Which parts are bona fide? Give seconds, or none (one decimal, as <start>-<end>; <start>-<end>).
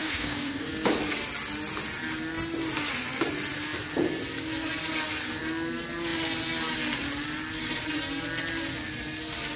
0.7-9.6